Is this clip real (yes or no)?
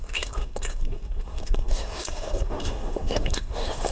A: no